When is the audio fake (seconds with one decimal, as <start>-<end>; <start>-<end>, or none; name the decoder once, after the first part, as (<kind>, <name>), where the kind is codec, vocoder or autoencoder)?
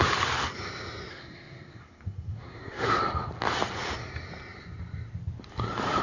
1.1-3.0 (codec, SNAC)